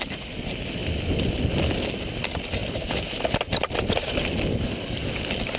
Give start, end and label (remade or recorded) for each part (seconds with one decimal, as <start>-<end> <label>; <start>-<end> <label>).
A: 0.0-5.6 recorded